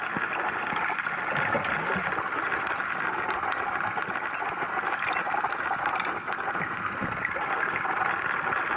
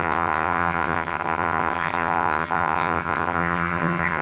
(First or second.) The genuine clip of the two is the first